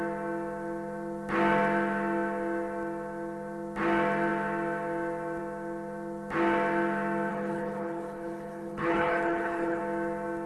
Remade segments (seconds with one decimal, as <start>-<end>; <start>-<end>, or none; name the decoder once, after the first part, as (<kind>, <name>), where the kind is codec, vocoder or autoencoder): 7.3-9.8 (codec, HILCodec)